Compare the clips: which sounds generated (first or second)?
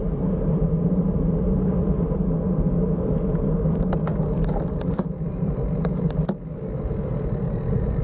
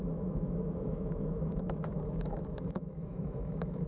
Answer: second